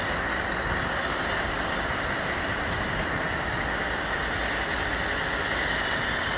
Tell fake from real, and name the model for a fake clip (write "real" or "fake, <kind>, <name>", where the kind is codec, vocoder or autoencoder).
real